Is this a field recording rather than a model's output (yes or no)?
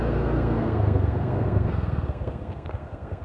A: no